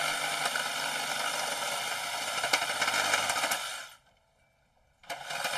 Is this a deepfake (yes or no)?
no